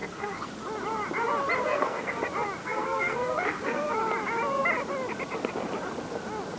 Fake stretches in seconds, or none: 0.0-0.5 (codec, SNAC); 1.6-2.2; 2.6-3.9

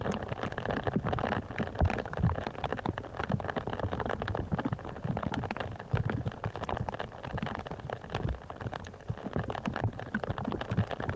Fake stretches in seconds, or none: none

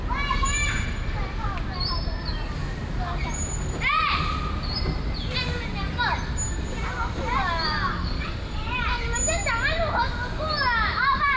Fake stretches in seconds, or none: 7.9-8.8 (codec, DAC)

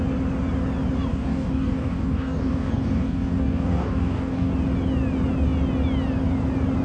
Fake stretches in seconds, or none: 1.1-4.5 (codec, DAC)